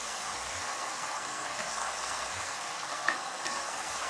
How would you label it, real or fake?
fake